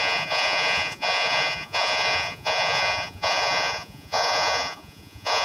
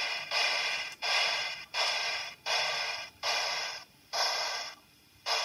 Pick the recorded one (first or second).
second